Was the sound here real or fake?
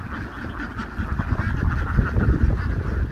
real